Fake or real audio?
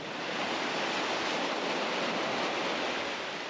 real